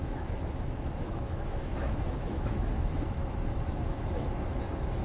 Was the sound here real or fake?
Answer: fake